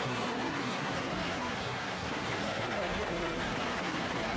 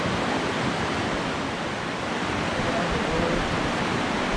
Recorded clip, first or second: second